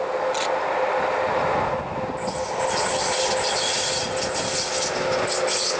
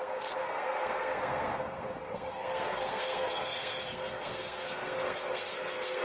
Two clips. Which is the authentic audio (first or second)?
first